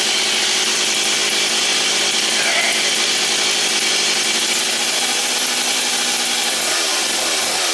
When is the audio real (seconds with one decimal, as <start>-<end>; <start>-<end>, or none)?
0.0-7.7